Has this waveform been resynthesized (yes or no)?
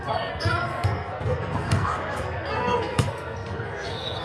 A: yes